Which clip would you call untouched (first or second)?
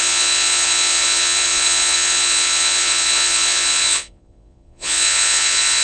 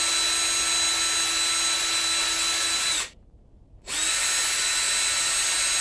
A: second